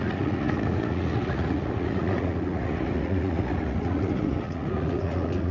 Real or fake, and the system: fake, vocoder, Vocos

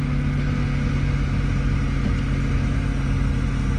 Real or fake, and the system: real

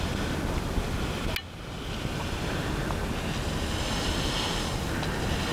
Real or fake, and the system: real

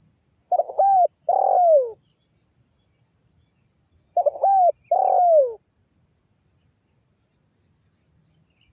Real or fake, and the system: real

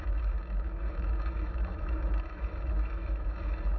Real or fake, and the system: fake, autoencoder, DAC-VAE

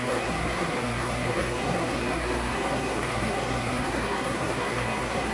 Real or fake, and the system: fake, codec, SNAC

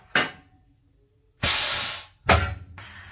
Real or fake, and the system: real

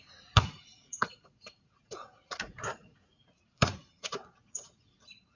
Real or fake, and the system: fake, vocoder, Vocos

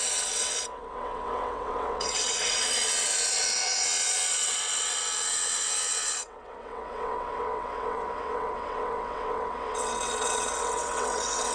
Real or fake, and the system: fake, vocoder, WaveNeXt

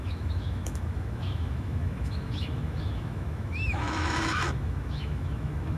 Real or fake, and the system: fake, autoencoder, DAC-VAE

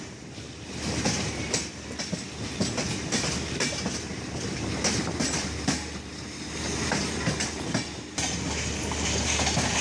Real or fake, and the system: real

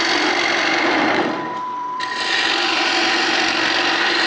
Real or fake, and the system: fake, vocoder, BigVGAN v2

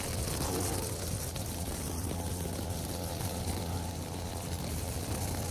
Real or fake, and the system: real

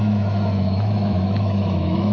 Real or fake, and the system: fake, autoencoder, DAC-VAE